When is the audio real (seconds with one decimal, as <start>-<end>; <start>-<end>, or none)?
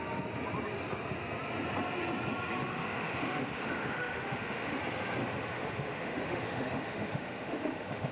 0.0-2.6; 4.8-5.2